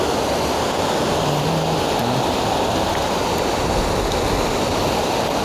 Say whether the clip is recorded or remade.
recorded